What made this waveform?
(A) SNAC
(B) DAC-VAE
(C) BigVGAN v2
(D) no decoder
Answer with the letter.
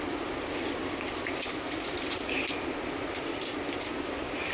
D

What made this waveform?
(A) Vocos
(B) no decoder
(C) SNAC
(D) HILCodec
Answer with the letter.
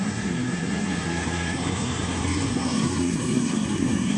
C